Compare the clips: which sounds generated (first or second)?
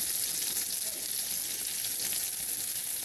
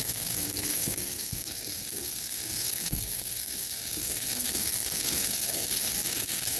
second